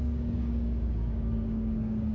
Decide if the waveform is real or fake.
fake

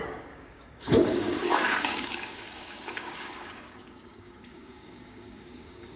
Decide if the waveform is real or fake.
fake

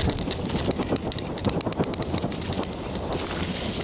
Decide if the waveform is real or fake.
real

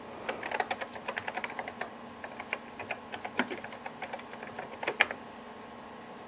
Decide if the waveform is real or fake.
real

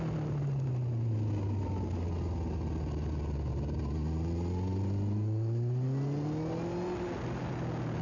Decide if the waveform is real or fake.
real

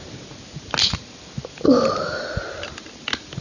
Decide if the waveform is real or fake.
real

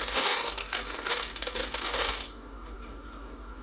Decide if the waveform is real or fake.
fake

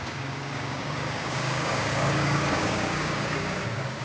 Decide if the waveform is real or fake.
fake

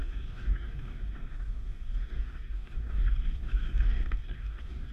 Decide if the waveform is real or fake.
fake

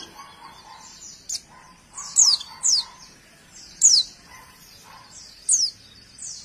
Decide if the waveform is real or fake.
real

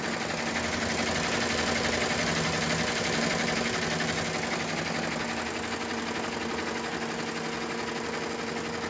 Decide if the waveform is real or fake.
real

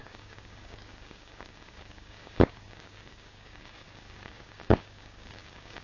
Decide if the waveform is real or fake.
fake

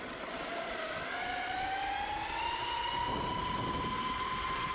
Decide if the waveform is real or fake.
real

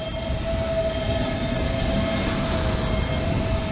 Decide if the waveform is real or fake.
real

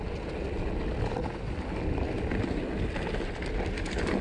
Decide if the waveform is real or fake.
real